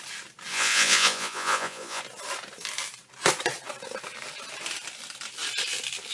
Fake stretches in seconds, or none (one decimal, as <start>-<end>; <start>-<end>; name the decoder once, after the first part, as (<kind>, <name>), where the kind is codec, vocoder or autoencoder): 0.5-2.0 (vocoder, Vocos)